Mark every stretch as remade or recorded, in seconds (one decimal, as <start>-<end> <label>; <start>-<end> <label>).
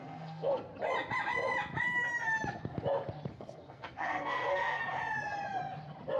0.0-0.7 remade; 0.7-3.3 recorded; 3.3-4.8 remade; 4.8-6.2 recorded